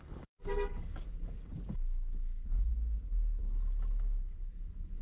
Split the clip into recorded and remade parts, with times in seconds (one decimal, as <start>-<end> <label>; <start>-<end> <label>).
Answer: 0.0-2.7 remade; 2.7-3.4 recorded; 3.4-5.0 remade